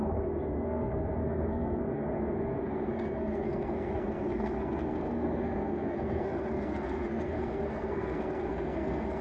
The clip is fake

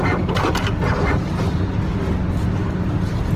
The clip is real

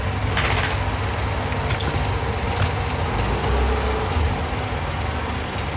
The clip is real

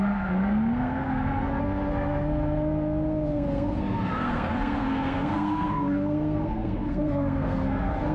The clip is fake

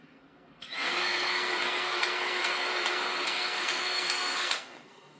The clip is fake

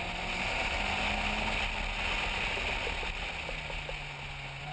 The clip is real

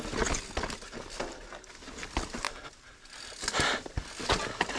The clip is real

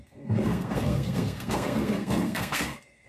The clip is fake